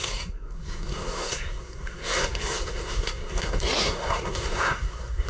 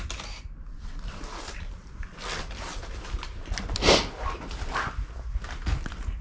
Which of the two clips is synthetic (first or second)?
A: first